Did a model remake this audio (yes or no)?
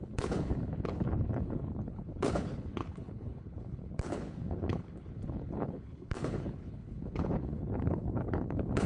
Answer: yes